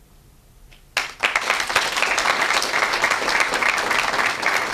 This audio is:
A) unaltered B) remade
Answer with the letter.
A